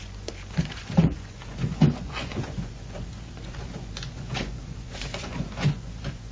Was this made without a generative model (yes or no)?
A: no